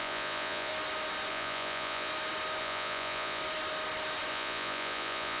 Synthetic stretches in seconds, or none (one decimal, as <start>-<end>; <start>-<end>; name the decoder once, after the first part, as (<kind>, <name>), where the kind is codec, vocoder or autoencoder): 0.0-0.7 (vocoder, Vocos); 1.3-2.1; 2.6-3.4; 4.3-5.4